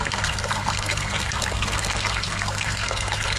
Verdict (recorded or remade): remade